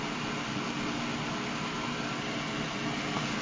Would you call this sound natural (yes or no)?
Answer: yes